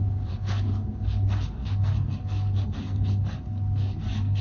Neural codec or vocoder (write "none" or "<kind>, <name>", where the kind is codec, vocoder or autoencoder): codec, SNAC